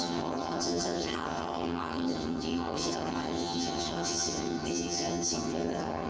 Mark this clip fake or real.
fake